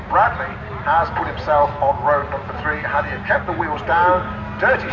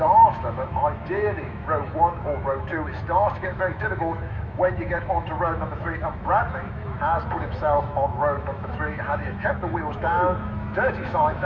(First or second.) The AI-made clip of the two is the second